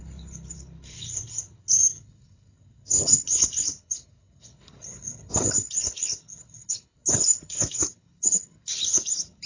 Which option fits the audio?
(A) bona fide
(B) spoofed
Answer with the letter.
B